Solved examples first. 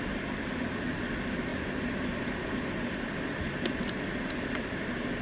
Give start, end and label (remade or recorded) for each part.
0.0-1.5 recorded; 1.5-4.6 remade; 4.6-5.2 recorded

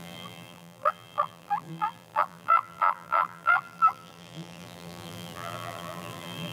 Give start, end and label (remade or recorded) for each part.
0.0-6.5 remade

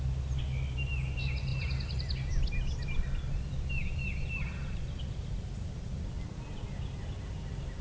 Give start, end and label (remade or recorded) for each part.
0.0-1.5 recorded; 1.5-6.0 remade; 6.0-7.8 recorded

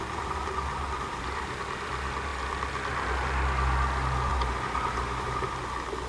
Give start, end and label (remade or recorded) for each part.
0.0-1.1 recorded; 1.1-1.9 remade; 1.9-4.3 recorded; 4.3-5.5 remade; 5.5-6.1 recorded